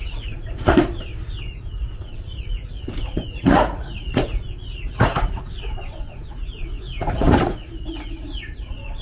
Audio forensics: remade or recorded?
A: remade